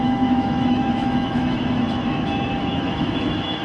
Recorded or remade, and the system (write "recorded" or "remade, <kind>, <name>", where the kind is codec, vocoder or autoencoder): remade, autoencoder, DAC-VAE